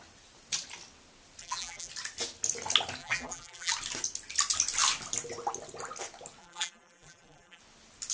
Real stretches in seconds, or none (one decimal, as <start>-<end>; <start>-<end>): 0.0-1.4; 1.9-3.0; 3.7-6.4; 7.6-8.1